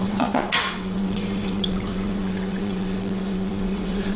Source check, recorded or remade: remade